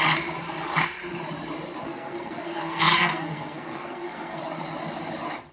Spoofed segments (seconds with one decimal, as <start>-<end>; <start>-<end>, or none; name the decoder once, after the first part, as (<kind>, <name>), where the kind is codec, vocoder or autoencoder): 1.8-4.4 (codec, SNAC)